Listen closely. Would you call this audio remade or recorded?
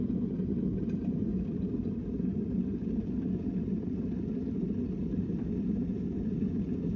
recorded